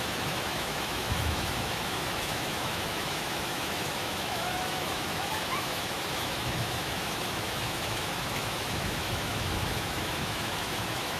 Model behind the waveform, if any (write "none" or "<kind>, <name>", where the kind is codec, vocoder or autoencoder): autoencoder, DAC-VAE